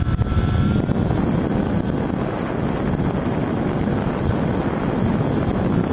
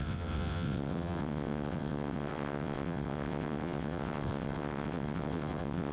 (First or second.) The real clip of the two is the first